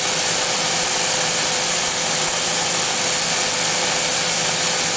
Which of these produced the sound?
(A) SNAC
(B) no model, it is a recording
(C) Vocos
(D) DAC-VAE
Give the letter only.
B